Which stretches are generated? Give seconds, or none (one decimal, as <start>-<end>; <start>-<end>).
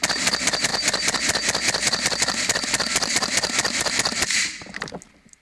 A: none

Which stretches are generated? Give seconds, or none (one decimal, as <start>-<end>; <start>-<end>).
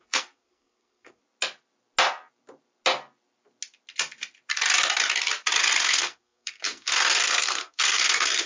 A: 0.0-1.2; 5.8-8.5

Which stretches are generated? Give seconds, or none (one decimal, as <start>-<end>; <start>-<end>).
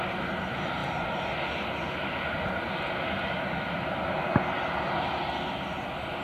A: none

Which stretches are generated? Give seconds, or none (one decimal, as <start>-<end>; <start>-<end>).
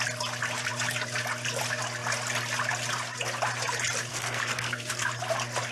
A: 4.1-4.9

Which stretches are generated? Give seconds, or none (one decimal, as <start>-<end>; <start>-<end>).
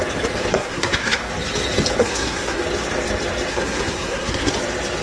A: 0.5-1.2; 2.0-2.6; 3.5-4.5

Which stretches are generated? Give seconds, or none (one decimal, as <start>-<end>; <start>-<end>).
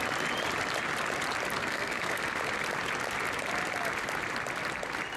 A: 1.6-2.2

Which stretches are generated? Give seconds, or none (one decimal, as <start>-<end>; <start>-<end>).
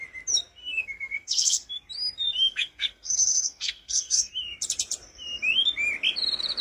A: 0.6-1.7; 2.5-4.3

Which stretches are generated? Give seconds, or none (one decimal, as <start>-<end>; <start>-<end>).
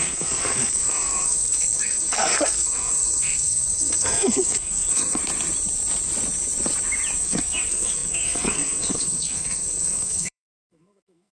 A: 0.0-5.2; 7.2-11.3